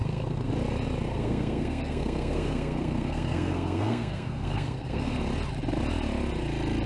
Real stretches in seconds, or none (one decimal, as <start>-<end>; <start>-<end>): 0.5-1.1; 5.2-6.9